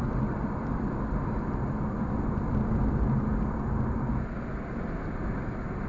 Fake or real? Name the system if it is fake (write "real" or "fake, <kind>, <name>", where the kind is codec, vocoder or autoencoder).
real